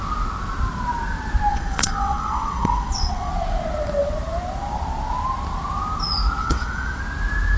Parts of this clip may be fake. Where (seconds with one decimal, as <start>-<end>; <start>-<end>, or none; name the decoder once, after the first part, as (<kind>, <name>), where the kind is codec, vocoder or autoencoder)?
1.5-3.3 (vocoder, WaveNeXt); 6.4-7.0